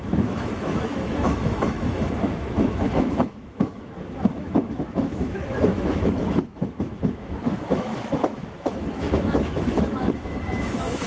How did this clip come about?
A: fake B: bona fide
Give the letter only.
A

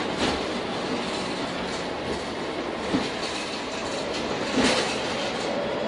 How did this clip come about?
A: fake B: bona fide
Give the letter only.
B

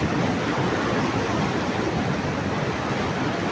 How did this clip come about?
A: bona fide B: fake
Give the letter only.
A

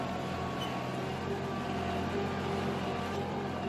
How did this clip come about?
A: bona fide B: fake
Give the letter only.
A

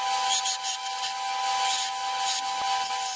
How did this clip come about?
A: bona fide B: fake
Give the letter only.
A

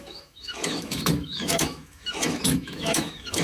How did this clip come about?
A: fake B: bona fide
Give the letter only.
A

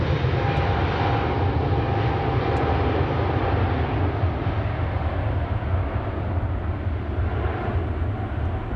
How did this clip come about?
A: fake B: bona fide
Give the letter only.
B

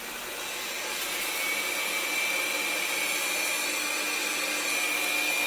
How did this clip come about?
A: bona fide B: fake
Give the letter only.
A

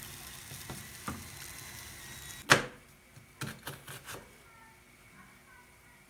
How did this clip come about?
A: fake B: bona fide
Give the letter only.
B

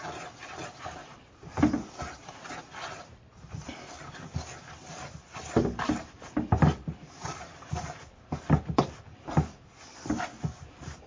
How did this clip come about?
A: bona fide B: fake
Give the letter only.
A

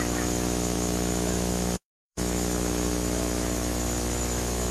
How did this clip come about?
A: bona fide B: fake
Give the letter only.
B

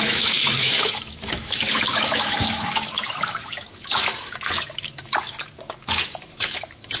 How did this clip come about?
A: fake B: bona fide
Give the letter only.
A